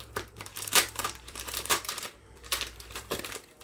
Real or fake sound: fake